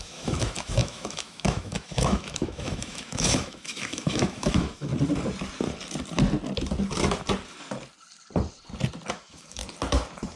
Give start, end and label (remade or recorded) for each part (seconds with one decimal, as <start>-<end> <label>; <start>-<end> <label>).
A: 0.0-4.9 remade; 4.9-9.1 recorded; 9.1-9.6 remade; 9.6-10.4 recorded